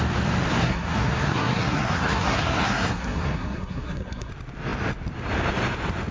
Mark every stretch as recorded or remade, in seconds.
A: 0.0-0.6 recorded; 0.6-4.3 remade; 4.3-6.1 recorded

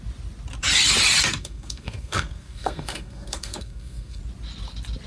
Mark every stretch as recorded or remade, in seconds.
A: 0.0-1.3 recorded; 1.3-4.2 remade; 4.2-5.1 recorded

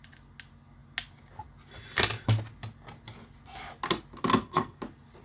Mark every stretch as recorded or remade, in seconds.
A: 0.0-4.3 recorded; 4.3-4.8 remade; 4.8-5.2 recorded